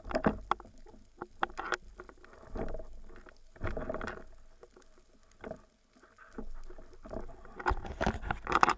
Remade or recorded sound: recorded